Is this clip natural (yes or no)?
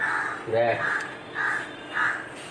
yes